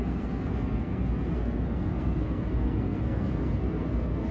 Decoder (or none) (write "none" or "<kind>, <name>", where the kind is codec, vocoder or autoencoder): codec, SNAC